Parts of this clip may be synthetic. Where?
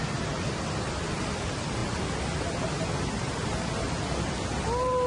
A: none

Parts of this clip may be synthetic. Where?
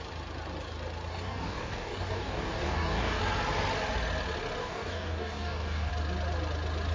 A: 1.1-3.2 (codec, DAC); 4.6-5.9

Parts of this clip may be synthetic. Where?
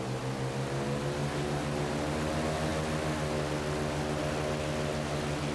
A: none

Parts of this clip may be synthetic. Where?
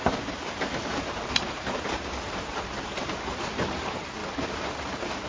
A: 0.0-4.2 (vocoder, BigVGAN v2)